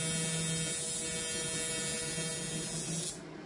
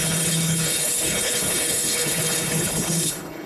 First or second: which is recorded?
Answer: first